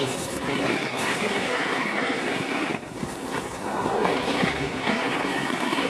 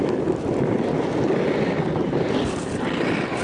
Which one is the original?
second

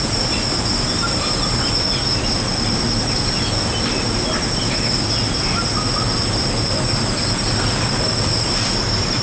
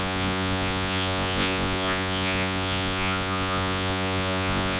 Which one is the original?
first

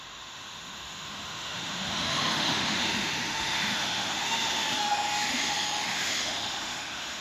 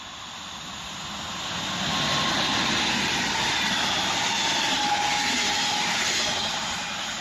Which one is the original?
second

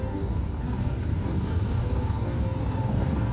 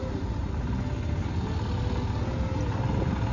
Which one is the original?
second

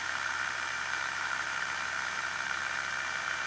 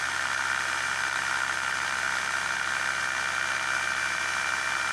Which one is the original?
second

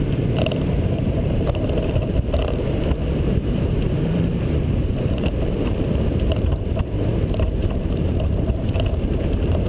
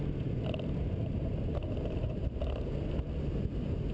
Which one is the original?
second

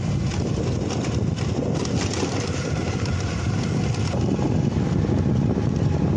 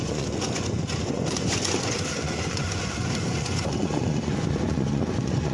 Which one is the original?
first